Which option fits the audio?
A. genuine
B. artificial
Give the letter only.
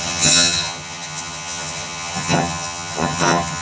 B